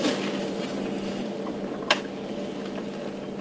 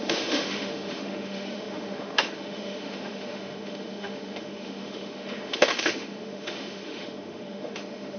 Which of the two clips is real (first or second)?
first